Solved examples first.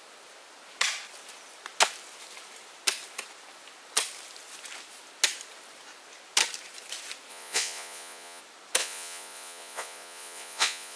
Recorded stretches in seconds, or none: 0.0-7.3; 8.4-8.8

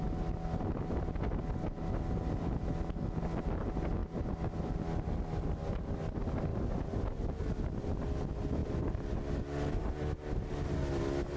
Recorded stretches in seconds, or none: 0.0-11.4